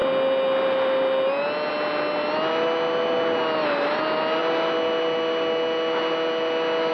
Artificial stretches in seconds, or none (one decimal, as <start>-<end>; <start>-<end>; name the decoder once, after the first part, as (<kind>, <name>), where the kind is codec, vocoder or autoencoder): none